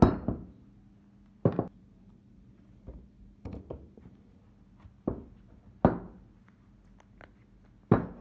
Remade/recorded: recorded